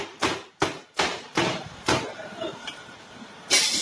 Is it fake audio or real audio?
fake